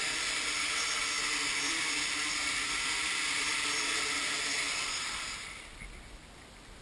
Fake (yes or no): no